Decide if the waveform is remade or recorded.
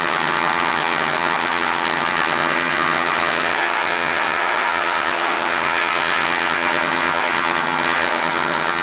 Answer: remade